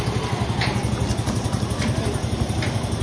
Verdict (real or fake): real